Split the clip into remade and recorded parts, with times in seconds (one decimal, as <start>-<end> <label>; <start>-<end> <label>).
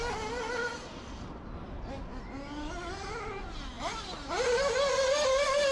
0.0-5.7 recorded